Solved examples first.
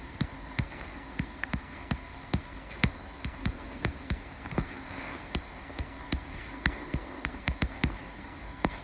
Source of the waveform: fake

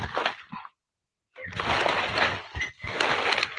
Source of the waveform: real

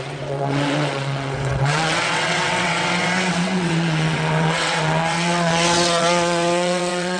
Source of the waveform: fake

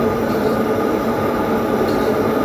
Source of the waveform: real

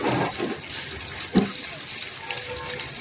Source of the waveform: real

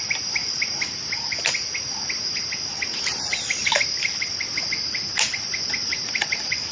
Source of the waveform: real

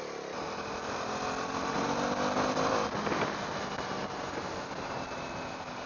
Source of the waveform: real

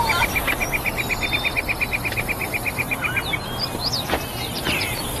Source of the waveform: real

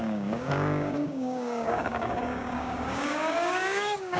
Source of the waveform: fake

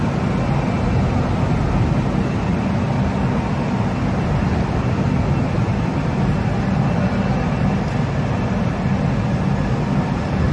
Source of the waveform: real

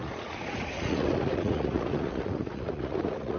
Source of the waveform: fake